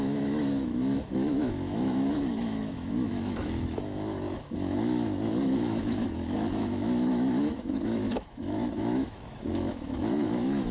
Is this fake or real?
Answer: fake